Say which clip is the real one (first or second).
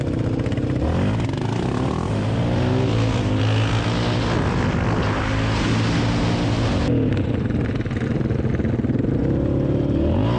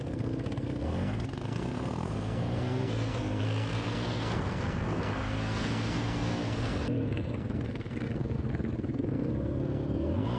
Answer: first